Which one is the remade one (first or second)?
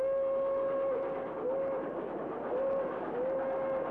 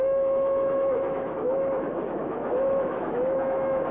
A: second